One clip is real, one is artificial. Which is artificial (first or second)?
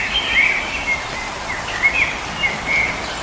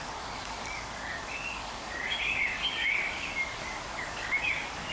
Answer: second